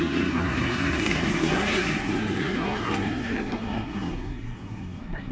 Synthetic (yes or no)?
yes